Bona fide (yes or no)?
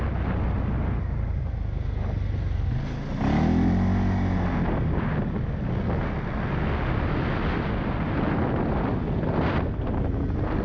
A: yes